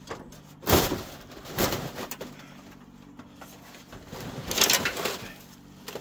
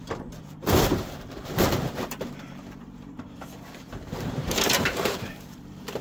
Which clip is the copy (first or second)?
second